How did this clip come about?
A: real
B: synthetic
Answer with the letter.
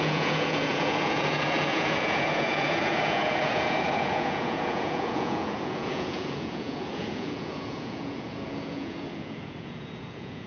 B